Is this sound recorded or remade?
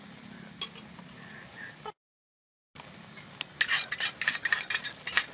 recorded